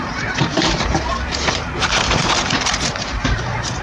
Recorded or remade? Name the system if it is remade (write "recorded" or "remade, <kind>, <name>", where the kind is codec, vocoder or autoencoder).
remade, vocoder, BigVGAN v2